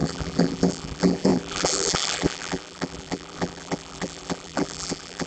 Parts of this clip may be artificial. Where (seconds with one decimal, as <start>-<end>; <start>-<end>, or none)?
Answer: 0.0-5.3